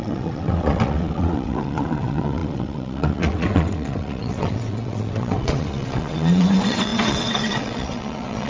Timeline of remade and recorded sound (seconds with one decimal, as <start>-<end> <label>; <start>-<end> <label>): 0.0-8.5 remade